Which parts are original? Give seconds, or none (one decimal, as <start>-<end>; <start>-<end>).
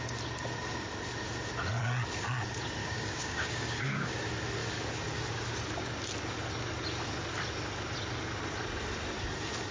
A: 0.0-2.8; 4.1-9.7